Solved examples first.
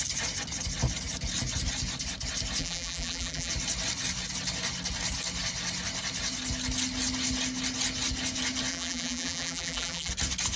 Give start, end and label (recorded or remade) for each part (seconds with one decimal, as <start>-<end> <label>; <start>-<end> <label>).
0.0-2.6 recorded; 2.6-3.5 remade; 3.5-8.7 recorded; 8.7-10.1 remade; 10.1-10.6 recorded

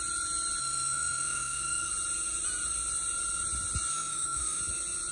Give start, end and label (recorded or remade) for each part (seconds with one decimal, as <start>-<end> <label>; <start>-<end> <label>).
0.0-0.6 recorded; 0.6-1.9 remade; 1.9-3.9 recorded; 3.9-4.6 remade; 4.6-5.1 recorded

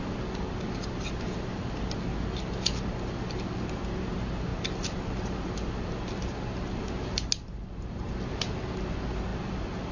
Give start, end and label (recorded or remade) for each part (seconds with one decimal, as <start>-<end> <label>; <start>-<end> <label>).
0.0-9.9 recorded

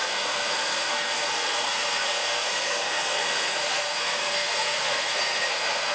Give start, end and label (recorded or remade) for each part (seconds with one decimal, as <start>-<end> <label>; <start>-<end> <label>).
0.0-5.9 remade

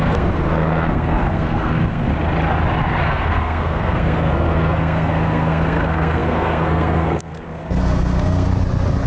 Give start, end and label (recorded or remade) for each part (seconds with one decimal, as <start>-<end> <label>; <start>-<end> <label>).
0.0-2.1 remade; 2.1-3.0 recorded; 3.0-8.5 remade; 8.5-9.1 recorded